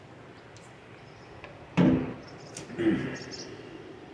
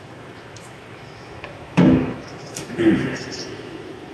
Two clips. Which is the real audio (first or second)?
first